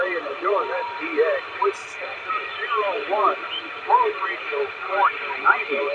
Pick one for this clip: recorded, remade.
remade